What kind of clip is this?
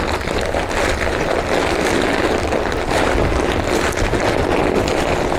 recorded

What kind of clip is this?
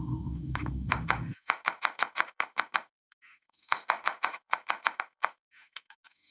remade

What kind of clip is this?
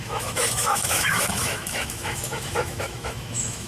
remade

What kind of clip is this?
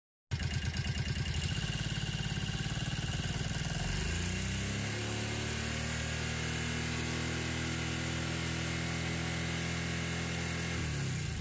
recorded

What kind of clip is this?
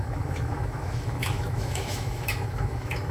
remade